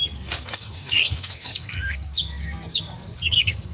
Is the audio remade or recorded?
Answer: remade